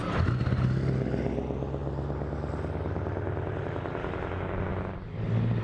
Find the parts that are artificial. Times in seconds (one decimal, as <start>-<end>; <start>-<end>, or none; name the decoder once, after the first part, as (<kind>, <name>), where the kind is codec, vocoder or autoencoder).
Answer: none